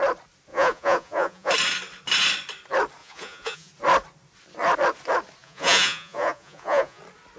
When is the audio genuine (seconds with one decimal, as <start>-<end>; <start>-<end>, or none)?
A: 0.0-0.5; 1.5-3.0; 3.7-5.4; 7.0-7.4